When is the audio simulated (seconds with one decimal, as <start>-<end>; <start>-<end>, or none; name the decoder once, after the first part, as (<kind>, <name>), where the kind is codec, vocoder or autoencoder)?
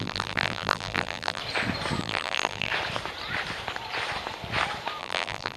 0.0-1.4 (vocoder, BigVGAN v2); 2.0-2.7; 5.0-5.6